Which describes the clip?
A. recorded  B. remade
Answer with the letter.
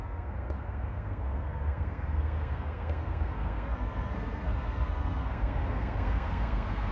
B